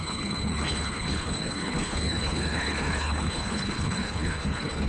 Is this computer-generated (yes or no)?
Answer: yes